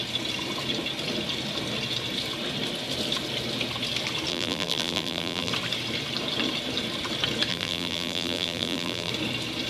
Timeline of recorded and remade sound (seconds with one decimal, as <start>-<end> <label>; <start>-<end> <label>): 0.0-4.3 recorded; 4.3-5.5 remade; 5.5-7.5 recorded; 7.5-9.1 remade; 9.1-9.7 recorded